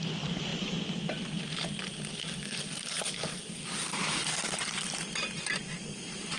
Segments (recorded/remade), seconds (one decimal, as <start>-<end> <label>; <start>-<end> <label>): 0.0-2.1 recorded; 2.1-4.9 remade; 4.9-6.4 recorded